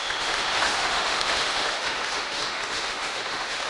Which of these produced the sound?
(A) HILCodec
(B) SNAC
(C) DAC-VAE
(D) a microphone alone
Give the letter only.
C